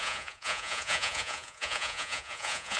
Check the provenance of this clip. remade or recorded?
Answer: remade